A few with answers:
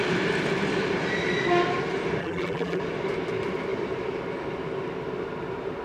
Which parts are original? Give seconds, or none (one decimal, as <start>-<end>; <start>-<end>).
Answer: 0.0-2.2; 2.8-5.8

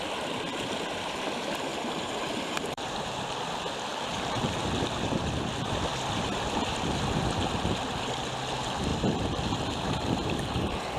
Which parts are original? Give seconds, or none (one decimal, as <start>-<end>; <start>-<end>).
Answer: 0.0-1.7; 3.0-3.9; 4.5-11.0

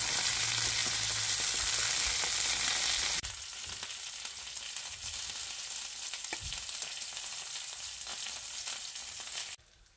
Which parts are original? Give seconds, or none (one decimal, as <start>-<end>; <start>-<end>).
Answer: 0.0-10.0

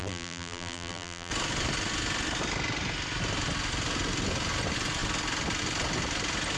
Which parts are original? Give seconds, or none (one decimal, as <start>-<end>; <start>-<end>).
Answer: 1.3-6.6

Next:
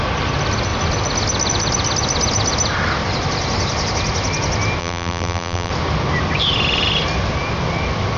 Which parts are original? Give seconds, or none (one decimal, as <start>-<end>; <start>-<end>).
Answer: 0.0-4.8; 5.7-8.2

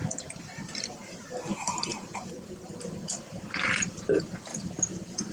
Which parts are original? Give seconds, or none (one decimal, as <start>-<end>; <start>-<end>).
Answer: 4.5-5.3

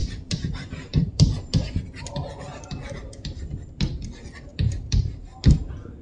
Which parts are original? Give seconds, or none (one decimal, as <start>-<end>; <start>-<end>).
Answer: 2.1-4.5; 5.2-6.0

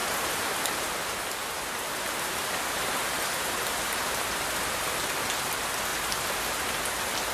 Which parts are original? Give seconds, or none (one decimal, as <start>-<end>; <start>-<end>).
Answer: 0.9-1.4; 4.6-5.9; 6.8-7.3